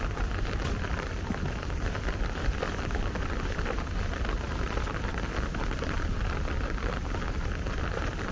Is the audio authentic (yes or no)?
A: yes